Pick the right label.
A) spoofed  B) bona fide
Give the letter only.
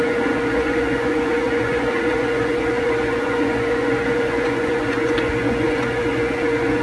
A